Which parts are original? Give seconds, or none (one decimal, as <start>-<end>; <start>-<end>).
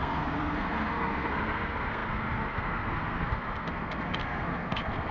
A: none